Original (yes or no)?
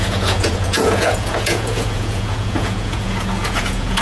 no